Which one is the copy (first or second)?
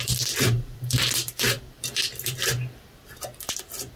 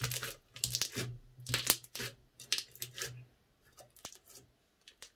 first